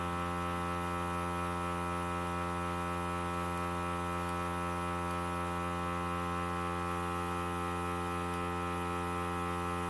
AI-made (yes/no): no